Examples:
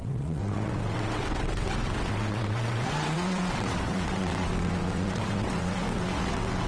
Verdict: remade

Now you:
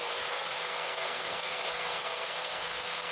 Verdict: remade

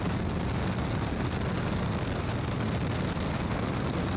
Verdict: recorded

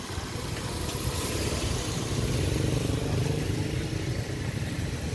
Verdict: recorded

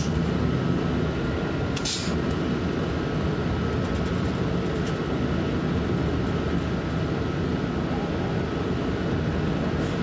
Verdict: recorded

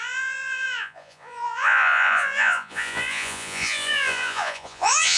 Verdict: remade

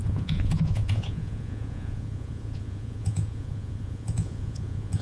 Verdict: remade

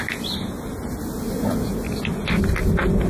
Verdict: recorded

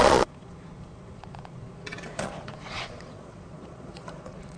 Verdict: remade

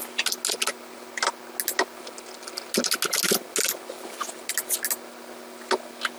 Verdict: recorded